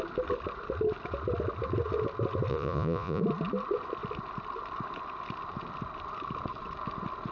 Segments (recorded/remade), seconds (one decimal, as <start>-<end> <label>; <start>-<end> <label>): 0.0-2.5 recorded; 2.5-3.2 remade; 3.2-7.3 recorded